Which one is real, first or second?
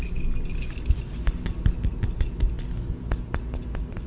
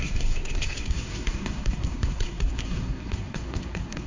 first